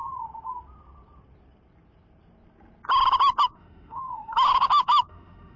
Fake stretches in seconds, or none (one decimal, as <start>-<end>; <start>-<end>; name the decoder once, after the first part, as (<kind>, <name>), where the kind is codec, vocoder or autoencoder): 3.4-5.6 (autoencoder, DAC-VAE)

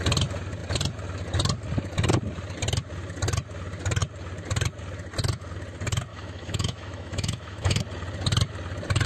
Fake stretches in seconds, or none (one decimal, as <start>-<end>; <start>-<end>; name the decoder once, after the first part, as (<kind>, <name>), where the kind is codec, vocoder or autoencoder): 6.1-7.8 (autoencoder, DAC-VAE)

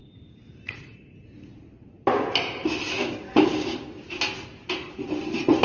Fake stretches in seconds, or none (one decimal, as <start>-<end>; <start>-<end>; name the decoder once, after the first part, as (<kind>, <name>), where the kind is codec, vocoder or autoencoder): 2.9-4.0 (codec, DAC)